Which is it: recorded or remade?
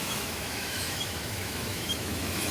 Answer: remade